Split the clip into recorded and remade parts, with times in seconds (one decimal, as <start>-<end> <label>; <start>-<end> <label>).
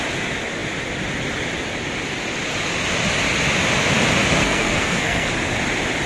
0.0-4.4 recorded; 4.4-5.3 remade; 5.3-6.1 recorded